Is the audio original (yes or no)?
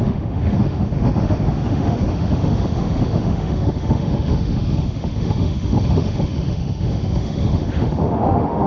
no